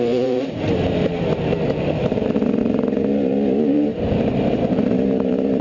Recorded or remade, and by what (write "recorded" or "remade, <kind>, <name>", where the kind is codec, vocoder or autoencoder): remade, vocoder, BigVGAN v2